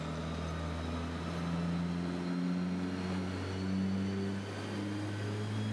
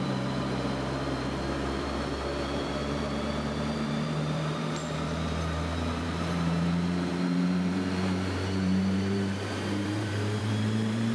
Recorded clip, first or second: first